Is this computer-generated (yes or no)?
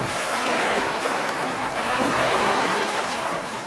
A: yes